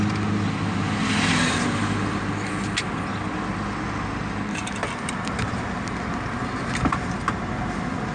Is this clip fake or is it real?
real